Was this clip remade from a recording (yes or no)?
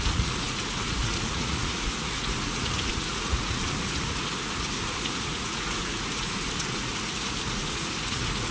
yes